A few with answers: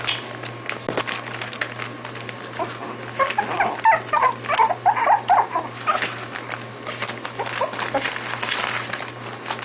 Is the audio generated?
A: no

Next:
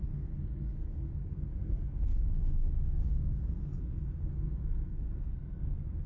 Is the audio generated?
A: yes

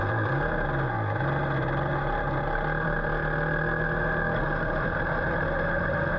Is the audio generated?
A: no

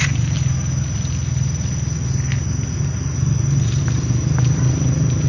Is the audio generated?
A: no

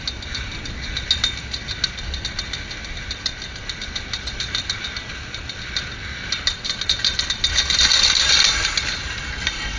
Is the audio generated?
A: no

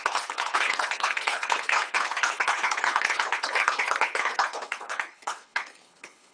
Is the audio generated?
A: yes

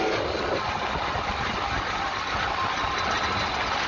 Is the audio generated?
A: no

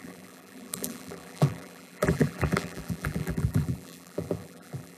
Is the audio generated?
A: yes